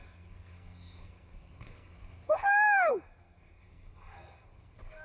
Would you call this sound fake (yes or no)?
yes